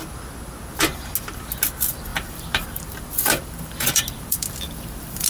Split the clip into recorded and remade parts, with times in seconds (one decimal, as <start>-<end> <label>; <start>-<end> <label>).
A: 0.0-2.1 recorded; 2.1-5.3 remade